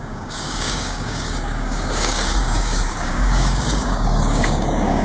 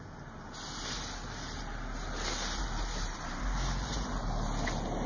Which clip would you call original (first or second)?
second